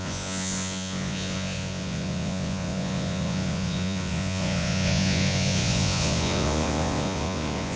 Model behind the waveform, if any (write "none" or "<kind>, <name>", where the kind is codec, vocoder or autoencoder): vocoder, Vocos